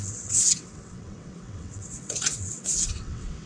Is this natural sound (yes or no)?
no